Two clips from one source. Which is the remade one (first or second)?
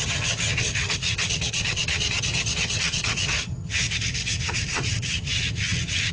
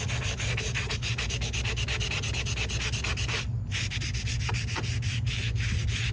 first